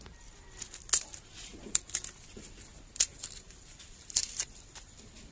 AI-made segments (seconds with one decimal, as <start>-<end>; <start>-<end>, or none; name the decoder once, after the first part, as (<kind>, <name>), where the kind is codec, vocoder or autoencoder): 1.5-4.7 (vocoder, BigVGAN v2)